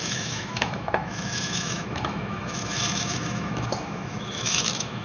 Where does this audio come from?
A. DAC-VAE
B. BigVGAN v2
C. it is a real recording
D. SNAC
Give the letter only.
A